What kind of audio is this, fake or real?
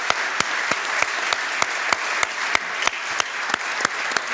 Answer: real